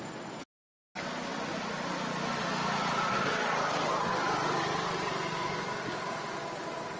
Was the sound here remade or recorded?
recorded